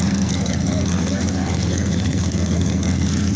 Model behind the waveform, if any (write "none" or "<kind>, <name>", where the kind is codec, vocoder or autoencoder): codec, SNAC